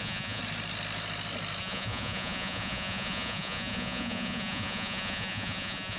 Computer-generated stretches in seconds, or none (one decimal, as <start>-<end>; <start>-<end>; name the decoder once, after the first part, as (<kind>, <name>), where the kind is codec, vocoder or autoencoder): 0.0-0.4 (vocoder, Vocos); 1.6-6.0